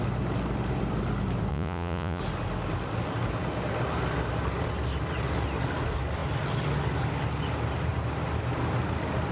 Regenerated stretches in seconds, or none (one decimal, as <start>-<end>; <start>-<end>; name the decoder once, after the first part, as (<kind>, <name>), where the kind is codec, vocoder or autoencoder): 1.5-2.2 (vocoder, Vocos)

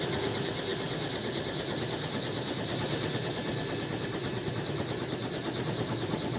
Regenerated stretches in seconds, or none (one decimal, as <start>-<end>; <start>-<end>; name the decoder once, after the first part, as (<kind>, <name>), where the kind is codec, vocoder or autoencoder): none

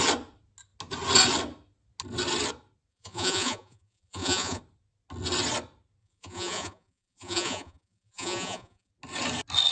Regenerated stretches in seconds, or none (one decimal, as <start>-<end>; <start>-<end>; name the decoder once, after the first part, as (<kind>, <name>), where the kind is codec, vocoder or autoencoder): 2.9-4.6 (vocoder, Vocos); 6.0-8.9

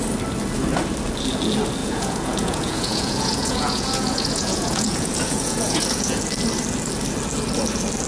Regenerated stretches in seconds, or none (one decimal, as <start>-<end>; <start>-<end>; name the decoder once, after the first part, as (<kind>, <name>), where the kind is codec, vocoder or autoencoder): 1.8-6.2 (vocoder, Vocos)